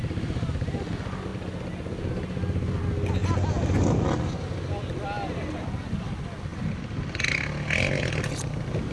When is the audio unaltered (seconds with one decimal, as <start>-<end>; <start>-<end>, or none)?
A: 0.0-8.9